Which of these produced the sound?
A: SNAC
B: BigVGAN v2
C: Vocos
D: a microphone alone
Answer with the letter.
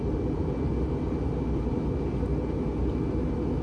D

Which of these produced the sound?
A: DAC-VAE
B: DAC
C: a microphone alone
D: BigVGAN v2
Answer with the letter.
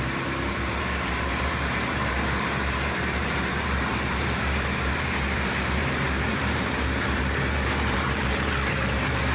D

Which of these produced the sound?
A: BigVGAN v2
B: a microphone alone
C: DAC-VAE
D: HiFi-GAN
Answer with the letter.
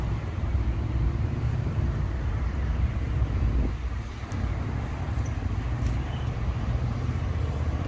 A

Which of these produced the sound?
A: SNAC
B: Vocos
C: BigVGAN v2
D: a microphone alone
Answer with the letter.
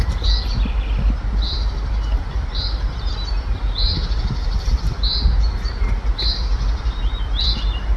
D